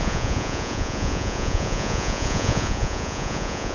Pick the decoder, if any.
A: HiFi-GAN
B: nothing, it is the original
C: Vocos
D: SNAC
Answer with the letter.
C